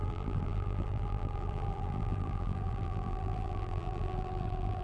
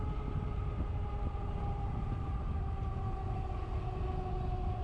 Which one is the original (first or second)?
second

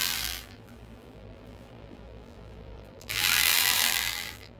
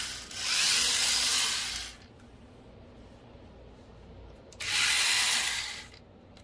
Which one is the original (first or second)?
second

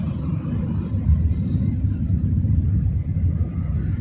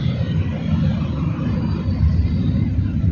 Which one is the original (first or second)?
second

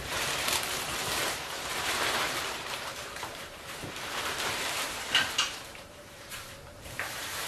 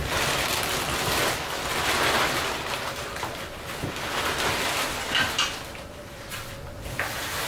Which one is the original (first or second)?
second